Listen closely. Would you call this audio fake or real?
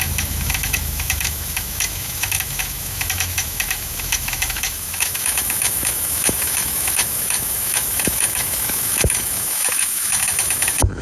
fake